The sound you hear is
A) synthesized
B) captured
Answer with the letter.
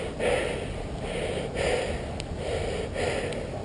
B